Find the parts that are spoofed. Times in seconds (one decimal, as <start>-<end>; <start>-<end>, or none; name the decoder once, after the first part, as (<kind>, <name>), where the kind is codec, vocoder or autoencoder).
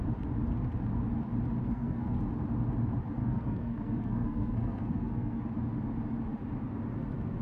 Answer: 1.6-2.2 (codec, SNAC); 3.2-5.4